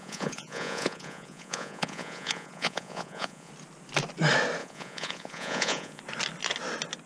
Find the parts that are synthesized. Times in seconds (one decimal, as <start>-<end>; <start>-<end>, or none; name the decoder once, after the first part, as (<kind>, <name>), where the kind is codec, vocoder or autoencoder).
0.0-3.5 (vocoder, Vocos); 4.6-6.0